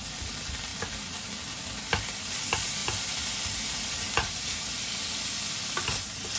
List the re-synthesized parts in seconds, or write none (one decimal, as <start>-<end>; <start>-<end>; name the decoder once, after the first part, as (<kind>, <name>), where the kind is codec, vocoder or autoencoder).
2.8-3.9 (vocoder, BigVGAN v2)